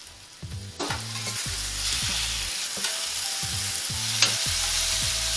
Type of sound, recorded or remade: recorded